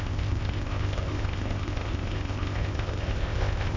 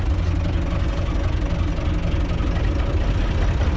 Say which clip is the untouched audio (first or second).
second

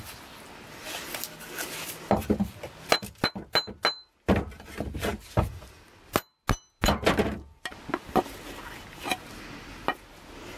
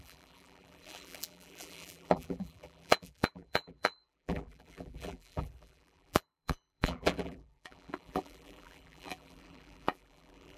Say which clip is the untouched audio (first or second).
first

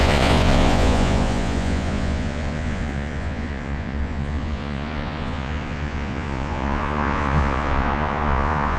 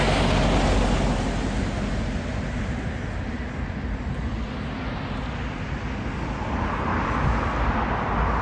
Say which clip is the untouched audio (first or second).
second